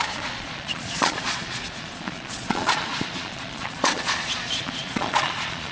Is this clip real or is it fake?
fake